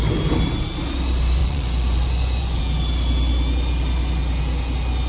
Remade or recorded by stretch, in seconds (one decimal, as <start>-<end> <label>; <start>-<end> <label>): 0.0-1.4 recorded; 1.4-2.6 remade; 2.6-5.1 recorded